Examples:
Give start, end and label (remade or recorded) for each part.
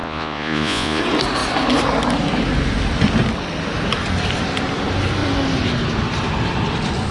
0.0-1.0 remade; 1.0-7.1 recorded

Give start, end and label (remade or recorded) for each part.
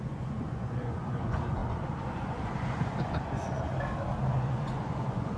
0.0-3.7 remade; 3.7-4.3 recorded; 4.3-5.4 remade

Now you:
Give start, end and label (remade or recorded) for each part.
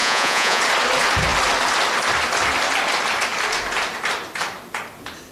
0.0-0.6 remade; 0.6-5.3 recorded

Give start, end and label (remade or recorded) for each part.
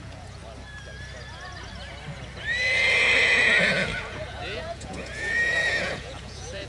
0.0-0.4 remade; 0.4-3.2 recorded; 3.2-6.7 remade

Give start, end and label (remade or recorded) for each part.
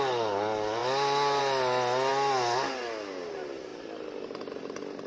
0.0-5.1 recorded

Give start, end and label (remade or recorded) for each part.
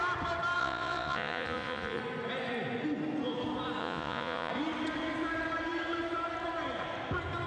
0.0-0.6 recorded; 0.6-2.0 remade; 2.0-3.8 recorded; 3.8-4.5 remade; 4.5-7.5 recorded